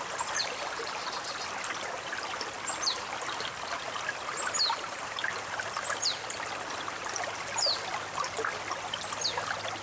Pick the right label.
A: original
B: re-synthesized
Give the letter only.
A